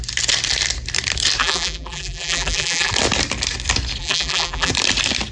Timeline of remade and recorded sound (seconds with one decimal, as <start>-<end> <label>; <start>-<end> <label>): 0.0-1.4 recorded; 1.4-2.9 remade; 2.9-4.0 recorded; 4.0-4.7 remade; 4.7-5.3 recorded